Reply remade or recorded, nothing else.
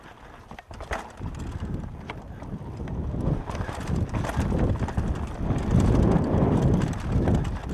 recorded